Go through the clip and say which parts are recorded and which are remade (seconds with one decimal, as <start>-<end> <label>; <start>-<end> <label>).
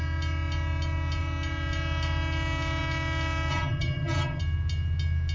0.0-3.5 recorded; 3.5-4.4 remade; 4.4-5.3 recorded